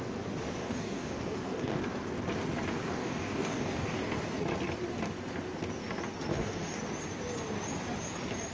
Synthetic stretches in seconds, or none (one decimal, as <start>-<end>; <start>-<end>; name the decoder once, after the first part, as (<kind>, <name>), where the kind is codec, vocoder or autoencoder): 0.6-1.8 (codec, DAC); 2.9-4.2; 6.3-6.8